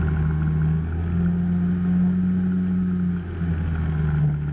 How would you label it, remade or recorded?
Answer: recorded